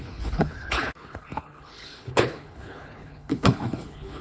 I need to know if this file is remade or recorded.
remade